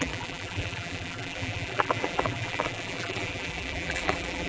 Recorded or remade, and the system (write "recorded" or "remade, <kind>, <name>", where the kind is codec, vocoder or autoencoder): remade, vocoder, BigVGAN v2